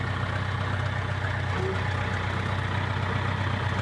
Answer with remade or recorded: recorded